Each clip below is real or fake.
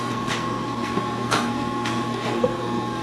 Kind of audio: fake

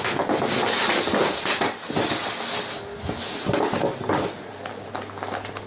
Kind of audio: real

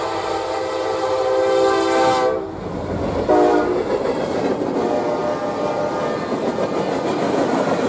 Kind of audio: real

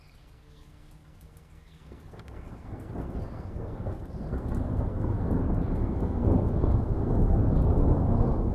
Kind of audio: fake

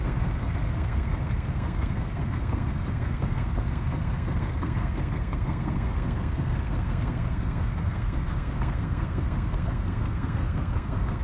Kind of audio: fake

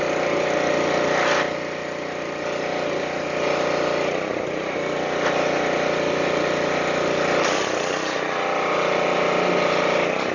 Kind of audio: real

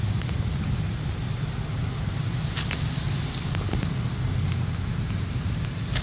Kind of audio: real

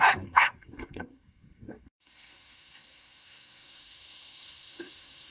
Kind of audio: fake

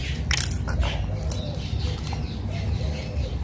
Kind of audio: real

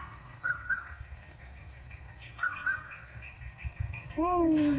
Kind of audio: fake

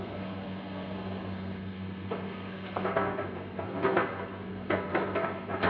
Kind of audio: fake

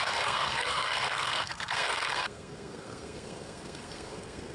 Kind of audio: fake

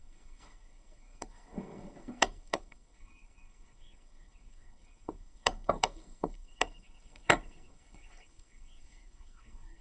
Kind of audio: fake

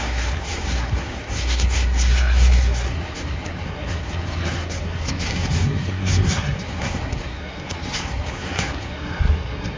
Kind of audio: fake